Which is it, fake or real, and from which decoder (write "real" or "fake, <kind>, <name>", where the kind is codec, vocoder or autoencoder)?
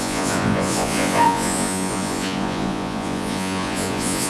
fake, vocoder, Vocos